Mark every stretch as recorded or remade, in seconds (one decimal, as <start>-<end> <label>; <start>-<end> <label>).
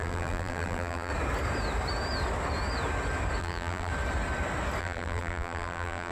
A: 0.0-1.1 remade; 1.1-3.4 recorded; 3.4-3.9 remade; 3.9-4.8 recorded; 4.8-6.1 remade